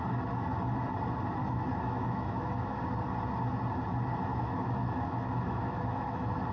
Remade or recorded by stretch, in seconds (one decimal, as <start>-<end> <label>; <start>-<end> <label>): 0.0-1.4 recorded; 1.4-2.8 remade; 2.8-4.3 recorded; 4.3-6.5 remade